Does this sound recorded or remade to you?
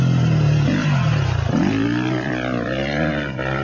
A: recorded